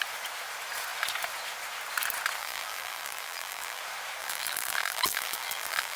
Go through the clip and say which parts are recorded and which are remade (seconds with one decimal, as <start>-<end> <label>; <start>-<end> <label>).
0.0-2.4 recorded; 2.4-3.8 remade; 3.8-4.2 recorded; 4.2-6.0 remade